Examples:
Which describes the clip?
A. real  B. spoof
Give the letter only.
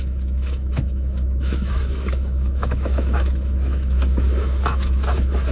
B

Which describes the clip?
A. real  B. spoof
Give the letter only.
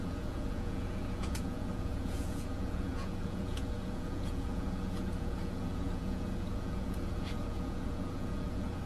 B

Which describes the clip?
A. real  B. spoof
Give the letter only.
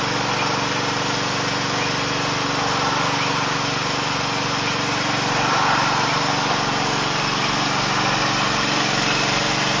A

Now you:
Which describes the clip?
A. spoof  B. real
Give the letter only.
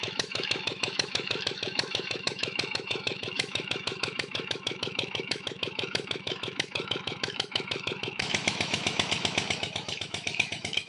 A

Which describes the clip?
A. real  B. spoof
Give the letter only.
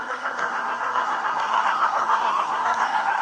B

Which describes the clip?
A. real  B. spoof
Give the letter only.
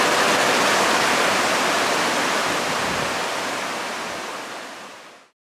A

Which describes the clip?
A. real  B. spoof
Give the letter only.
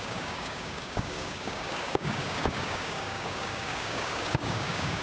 B